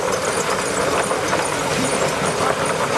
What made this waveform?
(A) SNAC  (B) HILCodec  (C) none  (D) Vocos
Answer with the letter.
C